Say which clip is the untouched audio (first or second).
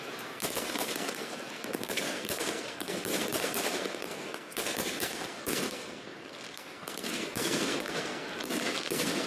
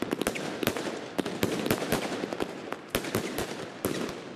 second